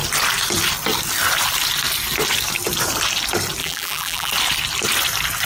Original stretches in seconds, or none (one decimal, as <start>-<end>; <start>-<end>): 0.0-3.6; 4.3-5.5